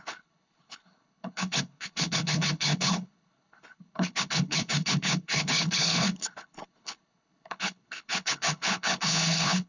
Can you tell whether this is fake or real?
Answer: fake